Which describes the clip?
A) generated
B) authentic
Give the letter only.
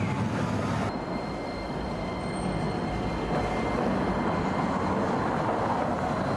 B